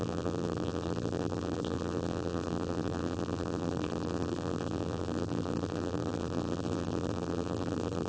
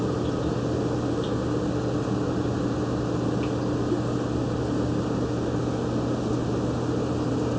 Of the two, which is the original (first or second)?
second